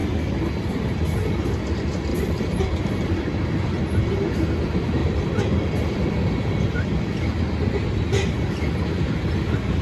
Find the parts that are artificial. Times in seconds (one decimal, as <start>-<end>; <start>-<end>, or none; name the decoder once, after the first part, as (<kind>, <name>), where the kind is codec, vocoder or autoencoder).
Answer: 0.0-0.7 (vocoder, BigVGAN v2); 2.1-2.8; 5.0-7.1